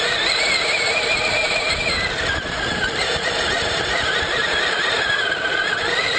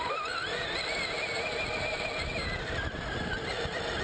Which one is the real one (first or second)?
second